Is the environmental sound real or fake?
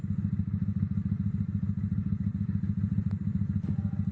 real